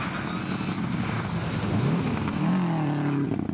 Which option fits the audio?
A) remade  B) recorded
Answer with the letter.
B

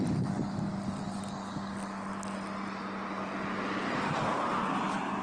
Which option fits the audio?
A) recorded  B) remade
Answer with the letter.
A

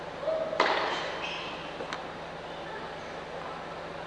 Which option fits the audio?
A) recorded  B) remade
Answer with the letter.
A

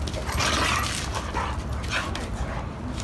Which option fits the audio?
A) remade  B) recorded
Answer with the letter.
B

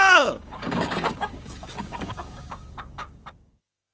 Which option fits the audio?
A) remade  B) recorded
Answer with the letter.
A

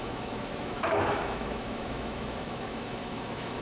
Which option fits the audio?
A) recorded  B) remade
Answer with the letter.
B